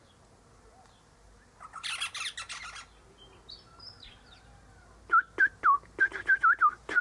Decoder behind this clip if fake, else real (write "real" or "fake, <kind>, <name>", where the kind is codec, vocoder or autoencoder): real